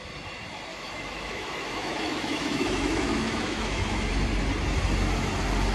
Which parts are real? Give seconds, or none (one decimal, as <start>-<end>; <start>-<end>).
0.0-0.7; 4.1-5.7